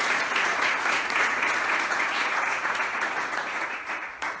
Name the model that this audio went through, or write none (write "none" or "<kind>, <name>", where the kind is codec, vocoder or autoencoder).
vocoder, Vocos